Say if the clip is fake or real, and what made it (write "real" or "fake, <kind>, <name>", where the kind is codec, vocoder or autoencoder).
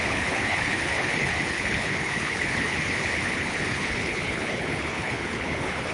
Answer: fake, codec, HILCodec